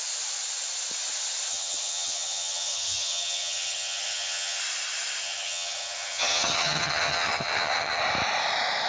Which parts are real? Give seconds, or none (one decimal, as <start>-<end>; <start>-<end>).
0.0-1.5; 4.6-5.2; 8.0-8.9